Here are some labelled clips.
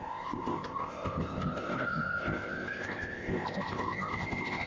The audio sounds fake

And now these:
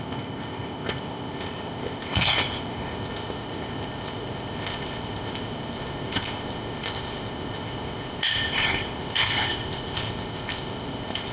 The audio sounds fake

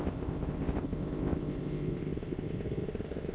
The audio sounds fake